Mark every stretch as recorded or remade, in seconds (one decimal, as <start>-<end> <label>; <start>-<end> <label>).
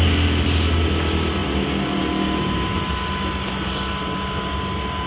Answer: 0.0-5.1 recorded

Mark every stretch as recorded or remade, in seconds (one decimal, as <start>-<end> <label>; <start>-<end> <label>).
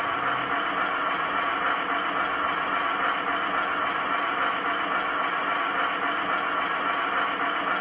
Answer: 0.0-7.8 recorded